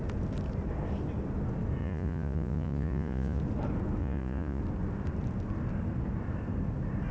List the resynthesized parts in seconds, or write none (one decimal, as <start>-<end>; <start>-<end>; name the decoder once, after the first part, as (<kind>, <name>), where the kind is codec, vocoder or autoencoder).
1.8-3.4 (vocoder, Vocos); 4.0-4.6